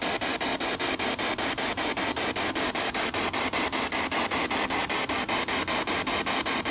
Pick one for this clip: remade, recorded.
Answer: recorded